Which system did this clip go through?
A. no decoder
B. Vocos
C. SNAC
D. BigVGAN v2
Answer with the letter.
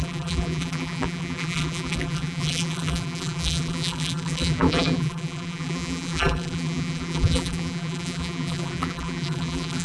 D